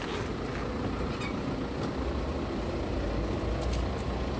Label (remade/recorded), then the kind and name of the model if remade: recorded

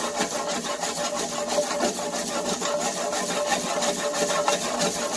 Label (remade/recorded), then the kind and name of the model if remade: recorded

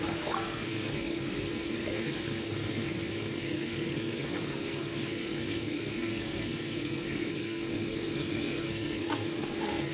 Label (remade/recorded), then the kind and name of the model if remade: remade, codec, SNAC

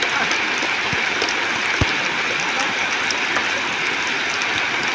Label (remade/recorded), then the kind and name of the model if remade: recorded